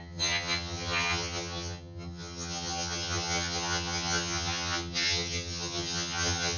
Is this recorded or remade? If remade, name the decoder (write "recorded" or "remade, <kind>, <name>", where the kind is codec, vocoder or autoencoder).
remade, vocoder, HiFi-GAN